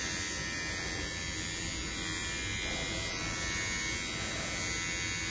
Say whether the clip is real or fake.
real